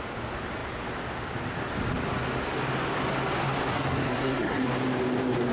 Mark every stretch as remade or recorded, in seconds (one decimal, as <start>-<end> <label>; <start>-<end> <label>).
0.0-3.7 recorded; 3.7-4.7 remade; 4.7-5.5 recorded